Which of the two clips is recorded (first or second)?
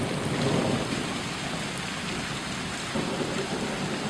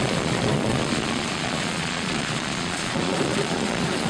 first